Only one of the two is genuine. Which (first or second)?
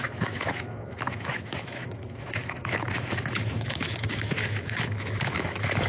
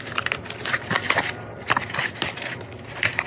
second